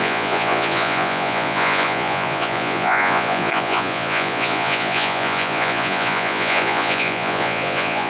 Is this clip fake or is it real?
fake